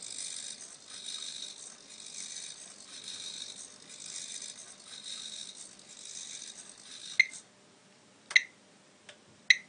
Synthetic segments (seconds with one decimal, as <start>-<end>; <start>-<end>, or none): none